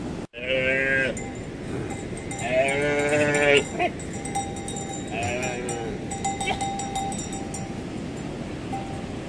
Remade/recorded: recorded